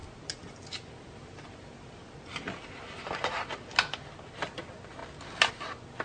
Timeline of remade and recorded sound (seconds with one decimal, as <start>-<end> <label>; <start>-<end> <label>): 0.0-6.0 recorded